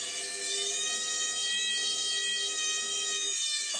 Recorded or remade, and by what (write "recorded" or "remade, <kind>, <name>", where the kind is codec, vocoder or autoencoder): remade, autoencoder, DAC-VAE